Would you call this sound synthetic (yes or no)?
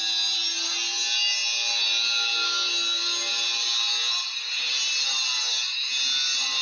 no